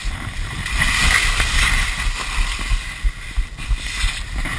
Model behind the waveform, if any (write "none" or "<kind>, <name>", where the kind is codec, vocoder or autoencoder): none